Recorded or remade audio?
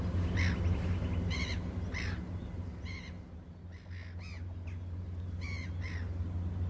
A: recorded